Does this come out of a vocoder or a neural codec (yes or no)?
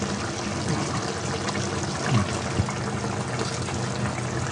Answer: no